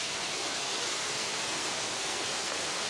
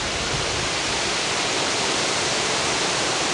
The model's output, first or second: first